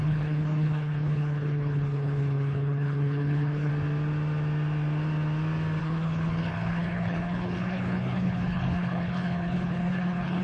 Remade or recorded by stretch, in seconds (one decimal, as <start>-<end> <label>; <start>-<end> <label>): 0.0-3.7 remade; 3.7-5.8 recorded; 5.8-10.4 remade